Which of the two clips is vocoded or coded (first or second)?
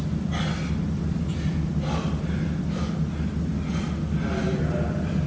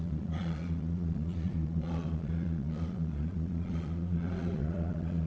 second